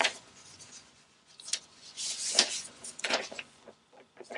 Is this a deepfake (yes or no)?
yes